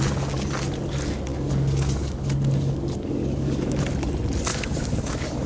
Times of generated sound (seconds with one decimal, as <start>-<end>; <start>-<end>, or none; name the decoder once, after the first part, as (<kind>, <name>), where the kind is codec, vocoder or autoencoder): 1.3-3.8 (codec, DAC); 4.5-5.5